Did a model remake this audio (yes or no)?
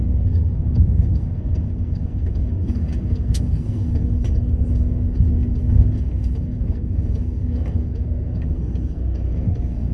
yes